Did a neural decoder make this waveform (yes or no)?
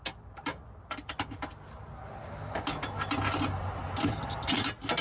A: no